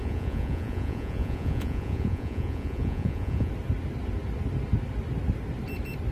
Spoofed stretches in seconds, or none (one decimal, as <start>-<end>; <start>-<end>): 0.0-3.5